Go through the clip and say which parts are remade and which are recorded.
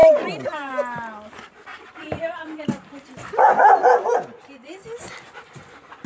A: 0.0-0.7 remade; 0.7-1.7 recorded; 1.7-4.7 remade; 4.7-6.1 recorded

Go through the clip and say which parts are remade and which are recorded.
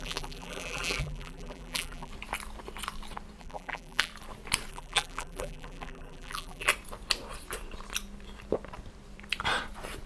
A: 0.0-2.1 remade; 2.1-3.4 recorded; 3.4-4.1 remade; 4.1-4.7 recorded; 4.7-6.7 remade; 6.7-10.1 recorded